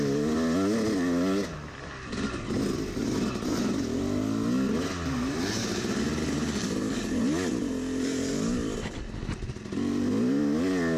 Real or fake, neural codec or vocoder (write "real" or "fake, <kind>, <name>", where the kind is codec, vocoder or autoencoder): real